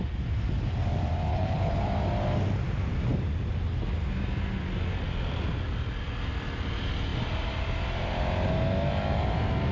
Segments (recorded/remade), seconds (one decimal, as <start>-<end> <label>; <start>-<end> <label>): 0.0-1.3 recorded; 1.3-1.8 remade; 1.8-9.7 recorded